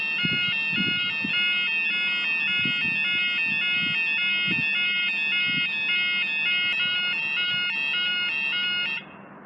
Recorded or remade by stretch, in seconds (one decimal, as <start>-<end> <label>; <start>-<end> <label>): 0.0-9.5 recorded